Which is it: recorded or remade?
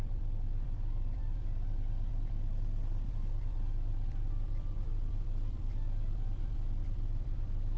remade